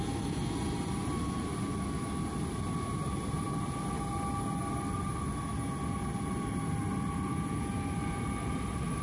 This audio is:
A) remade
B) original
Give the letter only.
B